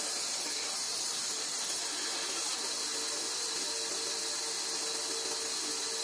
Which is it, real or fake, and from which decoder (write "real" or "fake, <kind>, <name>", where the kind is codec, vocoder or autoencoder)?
real